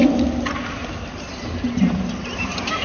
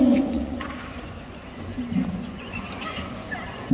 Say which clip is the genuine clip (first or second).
first